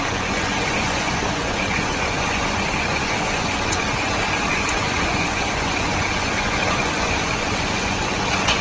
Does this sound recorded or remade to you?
remade